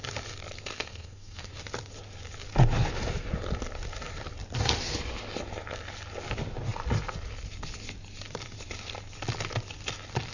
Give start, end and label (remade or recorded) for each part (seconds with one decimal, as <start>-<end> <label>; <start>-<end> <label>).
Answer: 0.0-0.7 recorded; 0.7-1.5 remade; 1.5-10.3 recorded